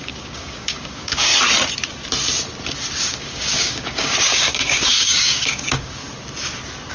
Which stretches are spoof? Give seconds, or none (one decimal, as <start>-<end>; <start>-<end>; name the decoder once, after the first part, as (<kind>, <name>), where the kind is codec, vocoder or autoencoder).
0.0-1.3 (codec, DAC); 3.0-6.0